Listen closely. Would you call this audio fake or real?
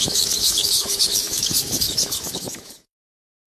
fake